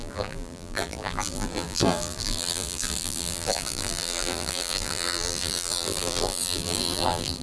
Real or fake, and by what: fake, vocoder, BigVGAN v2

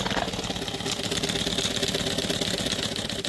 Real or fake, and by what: real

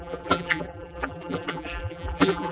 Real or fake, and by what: fake, vocoder, BigVGAN v2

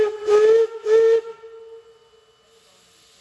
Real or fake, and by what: real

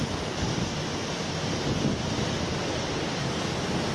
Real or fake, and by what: real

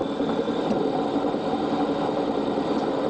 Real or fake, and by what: real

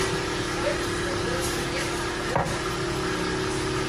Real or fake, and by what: real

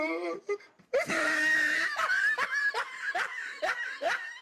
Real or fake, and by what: fake, vocoder, BigVGAN v2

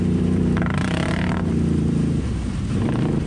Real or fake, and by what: fake, vocoder, BigVGAN v2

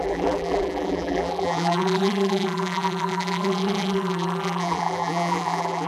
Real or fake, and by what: fake, vocoder, BigVGAN v2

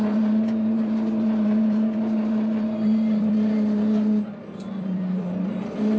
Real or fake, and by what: fake, vocoder, BigVGAN v2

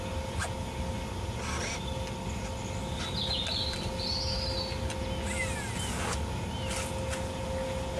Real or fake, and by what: real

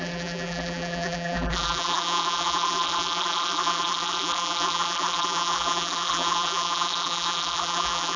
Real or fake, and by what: fake, vocoder, BigVGAN v2